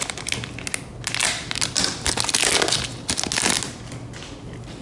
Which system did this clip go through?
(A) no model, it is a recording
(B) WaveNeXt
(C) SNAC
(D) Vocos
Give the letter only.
A